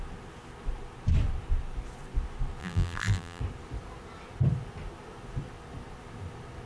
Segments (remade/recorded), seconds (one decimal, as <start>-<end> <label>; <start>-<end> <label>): 0.0-2.6 recorded; 2.6-3.4 remade; 3.4-6.7 recorded